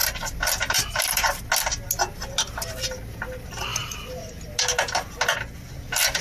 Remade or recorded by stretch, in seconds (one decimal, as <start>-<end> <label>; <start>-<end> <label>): 0.0-1.5 remade; 1.5-3.7 recorded; 3.7-4.2 remade; 4.2-6.2 recorded